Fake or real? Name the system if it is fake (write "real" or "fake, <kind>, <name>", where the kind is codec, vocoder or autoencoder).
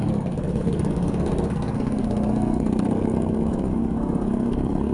fake, codec, SNAC